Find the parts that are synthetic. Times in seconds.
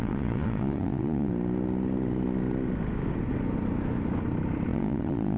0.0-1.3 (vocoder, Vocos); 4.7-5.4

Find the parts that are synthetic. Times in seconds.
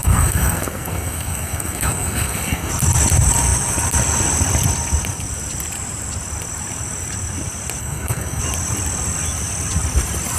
0.0-2.7 (codec, SNAC); 7.8-8.4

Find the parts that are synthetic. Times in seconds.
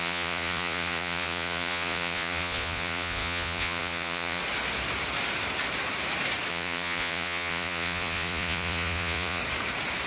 0.0-4.4 (vocoder, Vocos); 6.5-9.4